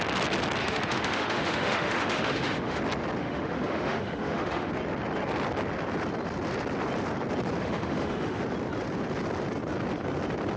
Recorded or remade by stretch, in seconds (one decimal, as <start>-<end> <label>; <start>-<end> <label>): 0.0-0.6 recorded; 0.6-2.8 remade; 2.8-3.2 recorded; 3.2-4.7 remade; 4.7-7.6 recorded; 7.6-8.4 remade; 8.4-10.6 recorded